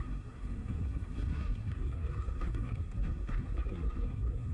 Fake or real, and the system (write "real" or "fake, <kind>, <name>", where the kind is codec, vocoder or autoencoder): fake, codec, SNAC